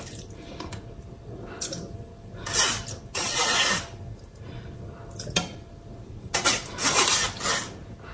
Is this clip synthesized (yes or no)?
no